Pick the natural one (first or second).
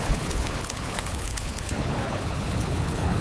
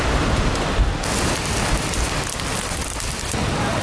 second